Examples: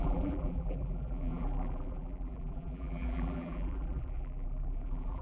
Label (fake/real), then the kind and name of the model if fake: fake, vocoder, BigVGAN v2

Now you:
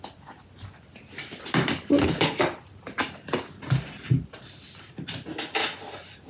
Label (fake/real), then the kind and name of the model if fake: real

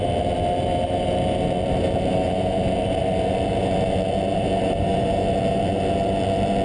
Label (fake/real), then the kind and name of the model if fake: fake, vocoder, BigVGAN v2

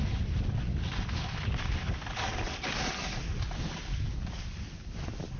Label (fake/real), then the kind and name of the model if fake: real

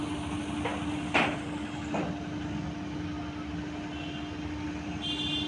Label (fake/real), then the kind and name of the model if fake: real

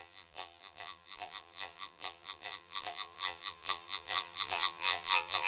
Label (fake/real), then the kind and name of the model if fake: fake, vocoder, BigVGAN v2